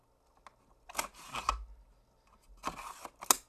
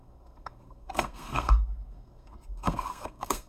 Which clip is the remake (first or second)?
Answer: second